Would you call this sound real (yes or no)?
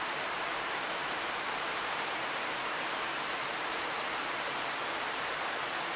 no